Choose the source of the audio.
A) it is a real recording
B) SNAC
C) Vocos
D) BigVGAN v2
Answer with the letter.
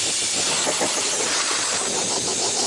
A